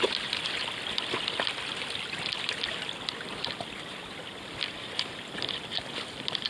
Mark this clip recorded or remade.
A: recorded